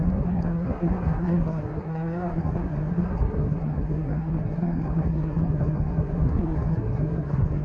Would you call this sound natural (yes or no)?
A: no